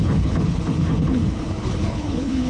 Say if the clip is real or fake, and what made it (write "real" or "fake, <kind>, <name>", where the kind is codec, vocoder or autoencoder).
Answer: fake, codec, HILCodec